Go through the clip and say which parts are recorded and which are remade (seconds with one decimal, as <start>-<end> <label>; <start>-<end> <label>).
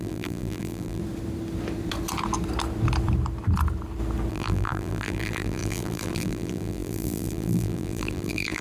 0.0-1.0 remade; 1.0-4.3 recorded; 4.3-8.6 remade